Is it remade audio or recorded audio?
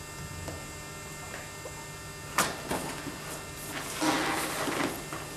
recorded